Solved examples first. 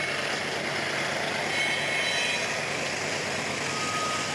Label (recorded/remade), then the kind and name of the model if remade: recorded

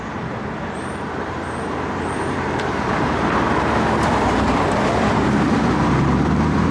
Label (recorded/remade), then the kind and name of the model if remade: remade, vocoder, BigVGAN v2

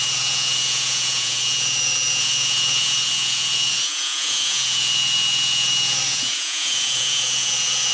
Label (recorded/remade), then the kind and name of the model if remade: remade, vocoder, Vocos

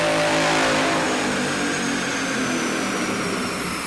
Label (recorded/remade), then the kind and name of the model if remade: recorded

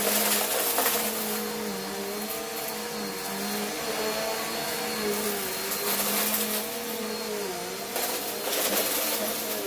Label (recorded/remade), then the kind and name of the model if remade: recorded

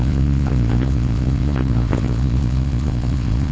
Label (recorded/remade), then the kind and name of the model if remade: remade, vocoder, Vocos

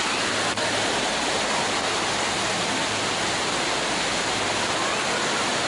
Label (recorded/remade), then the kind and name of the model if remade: recorded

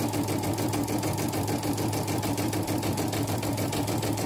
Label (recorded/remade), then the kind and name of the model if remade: recorded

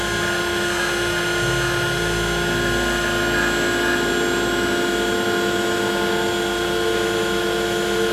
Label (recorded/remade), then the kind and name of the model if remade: recorded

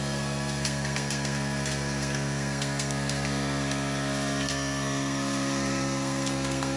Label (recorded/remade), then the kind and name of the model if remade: remade, codec, SNAC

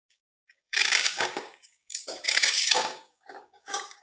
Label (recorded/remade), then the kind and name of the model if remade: remade, codec, DAC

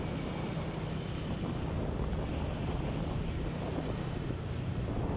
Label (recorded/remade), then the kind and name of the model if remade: recorded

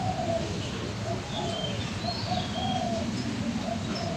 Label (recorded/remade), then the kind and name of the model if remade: recorded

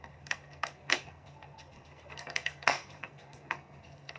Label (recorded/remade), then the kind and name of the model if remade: remade, codec, SNAC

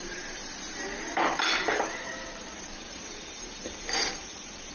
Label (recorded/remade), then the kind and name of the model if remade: remade, vocoder, BigVGAN v2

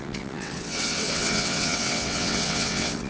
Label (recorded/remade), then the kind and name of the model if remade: remade, vocoder, WaveNeXt